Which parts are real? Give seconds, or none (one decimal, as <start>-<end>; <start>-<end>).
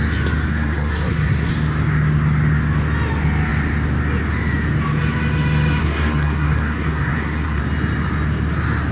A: 0.0-0.5; 1.5-5.8; 7.6-8.9